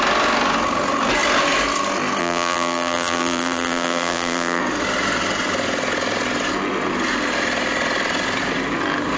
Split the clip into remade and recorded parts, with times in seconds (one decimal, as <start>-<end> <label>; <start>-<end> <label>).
0.0-2.2 recorded; 2.2-4.6 remade; 4.6-9.2 recorded